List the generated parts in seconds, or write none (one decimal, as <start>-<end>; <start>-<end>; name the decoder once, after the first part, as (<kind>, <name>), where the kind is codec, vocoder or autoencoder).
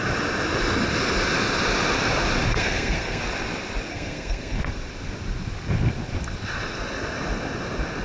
2.5-3.2 (codec, SNAC); 3.9-4.6